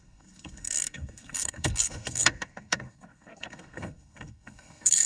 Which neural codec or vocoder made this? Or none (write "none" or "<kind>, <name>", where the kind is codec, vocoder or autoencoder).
codec, SNAC